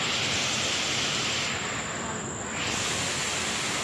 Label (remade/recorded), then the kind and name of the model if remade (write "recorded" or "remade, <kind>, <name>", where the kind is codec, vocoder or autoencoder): recorded